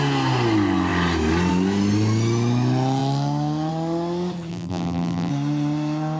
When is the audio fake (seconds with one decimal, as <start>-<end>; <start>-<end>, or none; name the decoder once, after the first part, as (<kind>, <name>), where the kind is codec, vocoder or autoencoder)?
4.5-5.3 (vocoder, BigVGAN v2)